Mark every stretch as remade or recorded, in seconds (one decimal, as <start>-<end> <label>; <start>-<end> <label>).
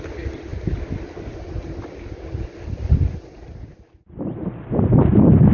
0.0-5.5 recorded